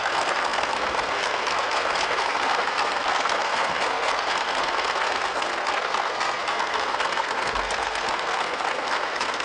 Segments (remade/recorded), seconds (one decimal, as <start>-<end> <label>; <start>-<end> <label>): 0.0-9.4 remade